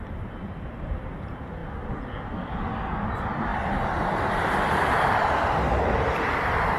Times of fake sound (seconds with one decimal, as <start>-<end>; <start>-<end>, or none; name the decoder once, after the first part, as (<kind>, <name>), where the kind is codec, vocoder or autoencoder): 0.0-1.6 (vocoder, BigVGAN v2); 2.5-3.5; 4.4-6.8